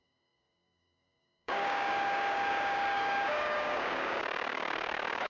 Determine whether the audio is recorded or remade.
remade